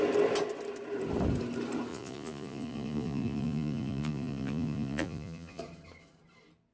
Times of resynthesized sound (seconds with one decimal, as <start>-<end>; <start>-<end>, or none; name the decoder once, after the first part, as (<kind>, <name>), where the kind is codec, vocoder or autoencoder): 1.9-5.6 (vocoder, Vocos)